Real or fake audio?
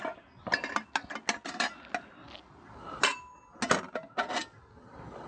real